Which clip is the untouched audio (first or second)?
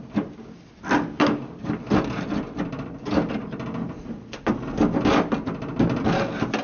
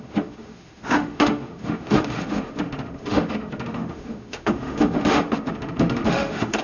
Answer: first